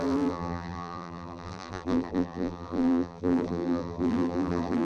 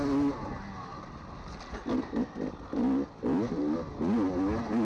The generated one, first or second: first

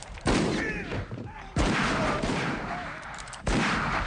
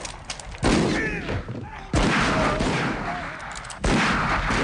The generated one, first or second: first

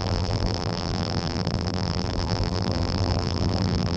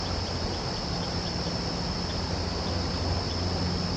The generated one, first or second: first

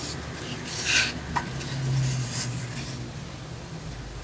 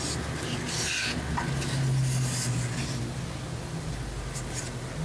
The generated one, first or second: first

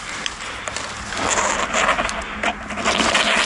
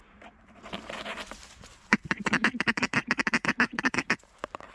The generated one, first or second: second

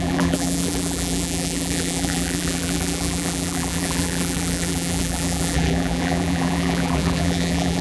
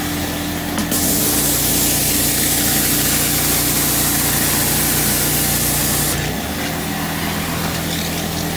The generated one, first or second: first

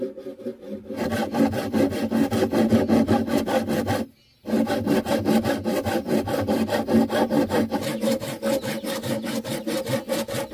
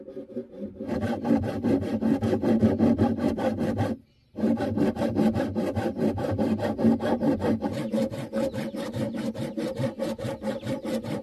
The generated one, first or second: second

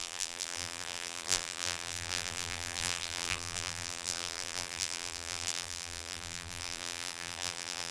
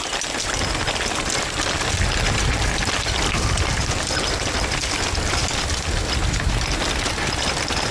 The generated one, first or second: first